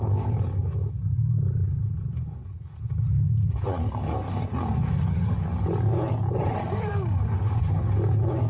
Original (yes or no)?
yes